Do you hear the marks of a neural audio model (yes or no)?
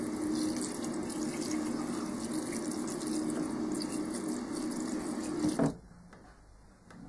no